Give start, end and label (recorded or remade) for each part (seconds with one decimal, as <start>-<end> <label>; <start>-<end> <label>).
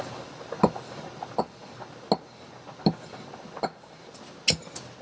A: 0.0-5.0 recorded